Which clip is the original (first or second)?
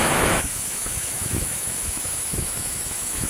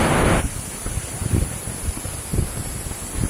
second